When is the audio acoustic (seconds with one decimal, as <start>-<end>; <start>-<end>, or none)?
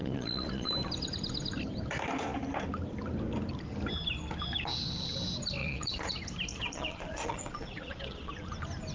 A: 0.7-5.6; 6.1-6.5; 8.3-8.9